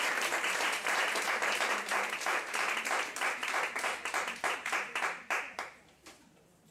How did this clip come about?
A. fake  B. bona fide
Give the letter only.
A